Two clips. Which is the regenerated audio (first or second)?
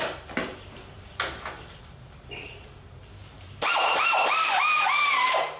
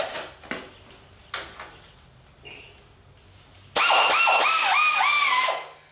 first